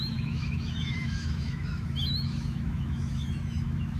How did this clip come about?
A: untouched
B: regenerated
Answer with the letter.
B